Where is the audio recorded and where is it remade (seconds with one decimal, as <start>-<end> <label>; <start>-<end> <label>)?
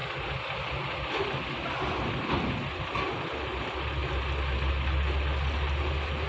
0.0-6.3 recorded